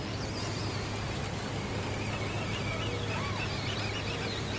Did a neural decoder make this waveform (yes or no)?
no